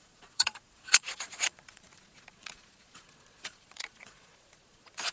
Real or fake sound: fake